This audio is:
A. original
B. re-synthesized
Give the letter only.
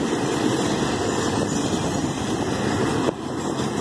B